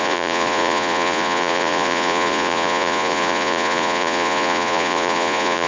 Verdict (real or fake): fake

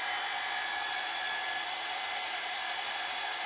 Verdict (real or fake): real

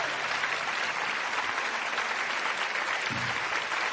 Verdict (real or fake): real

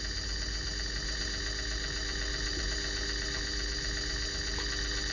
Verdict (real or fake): real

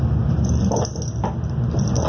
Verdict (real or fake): real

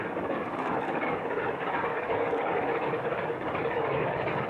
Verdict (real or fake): fake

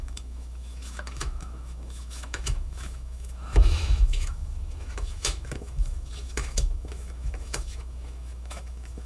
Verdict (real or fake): fake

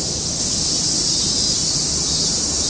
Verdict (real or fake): real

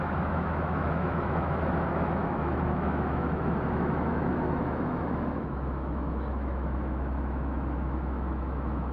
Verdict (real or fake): fake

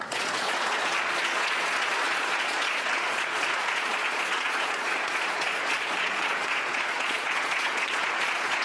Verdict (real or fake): fake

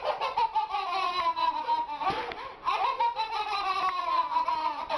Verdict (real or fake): real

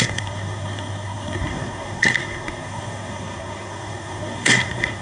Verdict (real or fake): fake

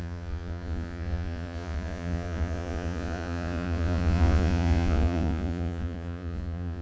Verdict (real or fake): fake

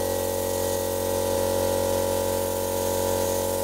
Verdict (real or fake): real